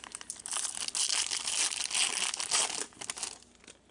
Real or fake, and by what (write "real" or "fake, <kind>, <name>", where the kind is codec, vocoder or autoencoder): real